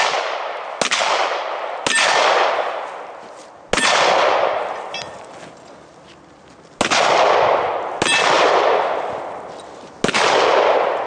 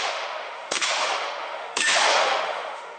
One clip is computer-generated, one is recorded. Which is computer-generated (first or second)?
second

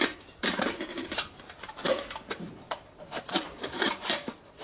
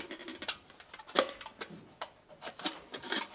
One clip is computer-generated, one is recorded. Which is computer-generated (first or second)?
first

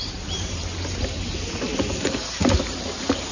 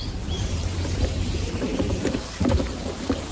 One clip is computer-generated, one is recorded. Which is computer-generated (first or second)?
second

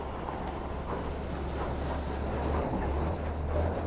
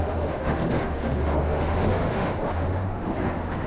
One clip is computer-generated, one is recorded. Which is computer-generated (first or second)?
second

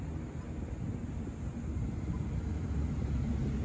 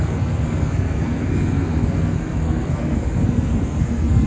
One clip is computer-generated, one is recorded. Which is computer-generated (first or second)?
second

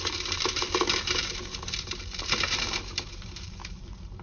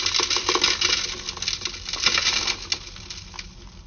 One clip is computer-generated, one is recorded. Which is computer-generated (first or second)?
first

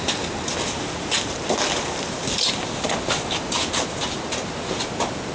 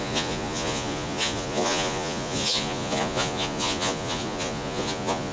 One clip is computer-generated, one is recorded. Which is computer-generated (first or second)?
second